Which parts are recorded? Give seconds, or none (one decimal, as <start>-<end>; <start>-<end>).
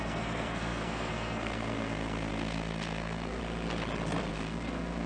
3.4-4.3